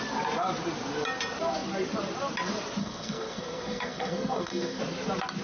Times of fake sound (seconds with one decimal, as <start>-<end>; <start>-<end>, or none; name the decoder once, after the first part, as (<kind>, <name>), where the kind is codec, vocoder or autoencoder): 2.8-4.8 (codec, SNAC)